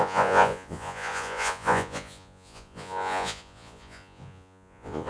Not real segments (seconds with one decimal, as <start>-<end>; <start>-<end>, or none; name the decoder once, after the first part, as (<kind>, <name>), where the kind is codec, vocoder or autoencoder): 0.0-5.1 (vocoder, Vocos)